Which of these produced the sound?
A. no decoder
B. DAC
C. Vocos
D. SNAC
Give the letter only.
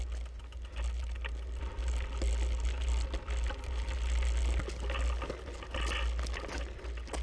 A